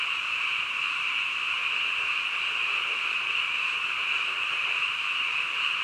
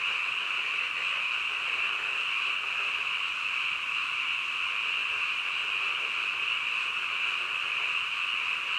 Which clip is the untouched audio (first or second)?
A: second